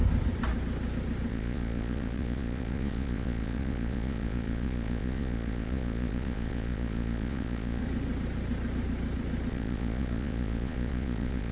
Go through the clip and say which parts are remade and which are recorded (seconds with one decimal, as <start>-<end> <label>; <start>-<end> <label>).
0.0-1.3 recorded; 1.3-7.8 remade; 7.8-9.5 recorded; 9.5-11.5 remade